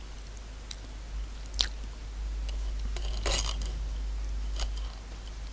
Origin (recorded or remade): recorded